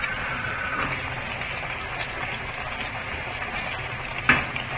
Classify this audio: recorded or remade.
recorded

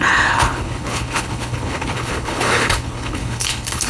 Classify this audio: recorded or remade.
remade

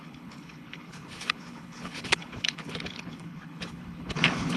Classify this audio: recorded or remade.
remade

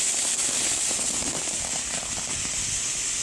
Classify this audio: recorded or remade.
recorded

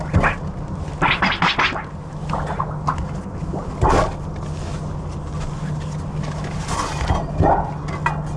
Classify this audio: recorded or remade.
recorded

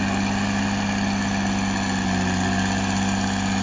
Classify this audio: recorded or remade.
recorded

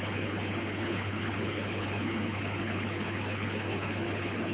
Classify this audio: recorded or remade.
remade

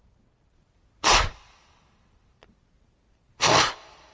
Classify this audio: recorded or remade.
recorded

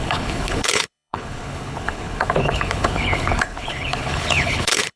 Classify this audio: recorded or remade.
remade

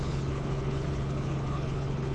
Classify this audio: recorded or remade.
remade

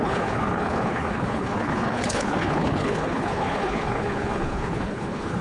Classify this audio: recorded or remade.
remade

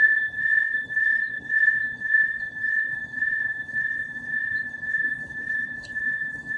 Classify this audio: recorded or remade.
remade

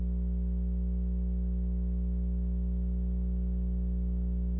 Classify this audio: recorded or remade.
recorded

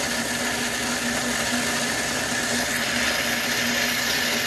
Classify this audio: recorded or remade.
recorded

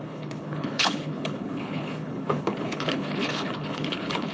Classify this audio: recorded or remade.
remade